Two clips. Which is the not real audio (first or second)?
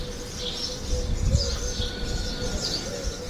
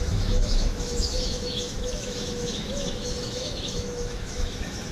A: second